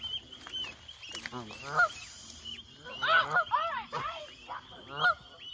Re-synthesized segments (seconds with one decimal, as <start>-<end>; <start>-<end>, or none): none